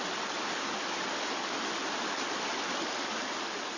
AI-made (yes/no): no